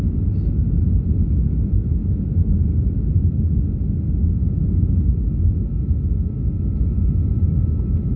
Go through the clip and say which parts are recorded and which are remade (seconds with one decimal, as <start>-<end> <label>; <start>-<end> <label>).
0.0-8.2 recorded